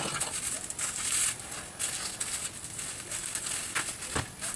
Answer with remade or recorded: recorded